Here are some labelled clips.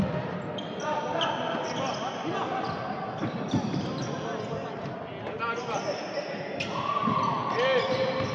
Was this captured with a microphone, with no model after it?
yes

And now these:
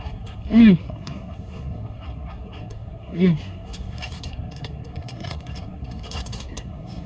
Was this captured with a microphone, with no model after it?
no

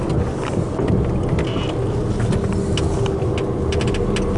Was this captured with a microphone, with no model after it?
yes